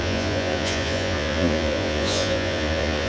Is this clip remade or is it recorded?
remade